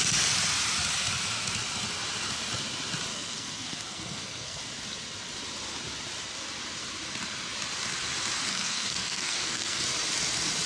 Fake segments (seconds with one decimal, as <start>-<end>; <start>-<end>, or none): 3.1-4.6; 8.5-9.8